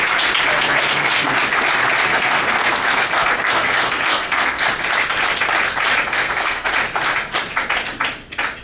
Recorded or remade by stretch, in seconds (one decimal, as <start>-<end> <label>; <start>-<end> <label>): 0.0-0.7 recorded; 0.7-1.3 remade; 1.3-2.1 recorded; 2.1-4.6 remade; 4.6-6.1 recorded; 6.1-6.7 remade; 6.7-8.6 recorded